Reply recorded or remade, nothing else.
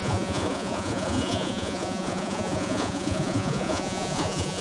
remade